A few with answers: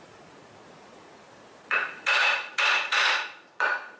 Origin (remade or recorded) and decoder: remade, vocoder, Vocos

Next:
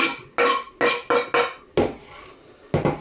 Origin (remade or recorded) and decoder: recorded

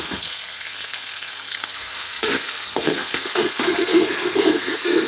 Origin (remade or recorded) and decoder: remade, codec, SNAC